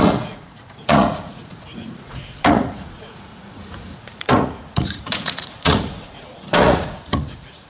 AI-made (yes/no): yes